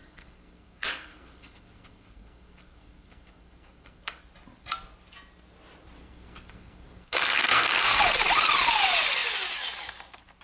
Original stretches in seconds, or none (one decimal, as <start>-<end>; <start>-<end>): 4.2-6.0; 8.0-10.4